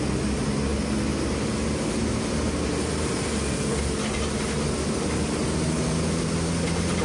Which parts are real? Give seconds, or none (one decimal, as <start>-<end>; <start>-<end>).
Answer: 0.0-7.0